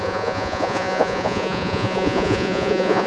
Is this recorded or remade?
remade